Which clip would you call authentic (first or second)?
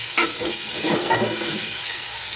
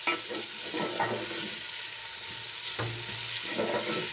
second